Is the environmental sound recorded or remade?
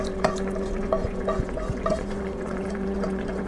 remade